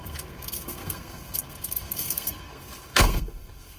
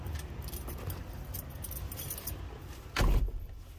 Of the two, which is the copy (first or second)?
first